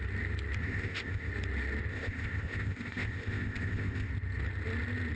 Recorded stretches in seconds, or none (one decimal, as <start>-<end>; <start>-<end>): 0.0-0.6; 1.3-1.9; 4.1-5.2